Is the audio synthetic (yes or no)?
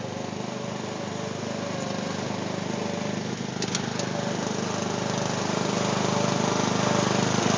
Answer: no